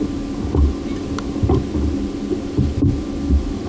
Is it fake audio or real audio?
real